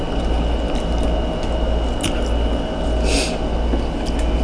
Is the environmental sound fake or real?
real